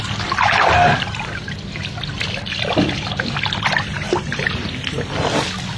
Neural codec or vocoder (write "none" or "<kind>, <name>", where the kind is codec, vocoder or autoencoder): none